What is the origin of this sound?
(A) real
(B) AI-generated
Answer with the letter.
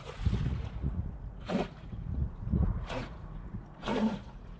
B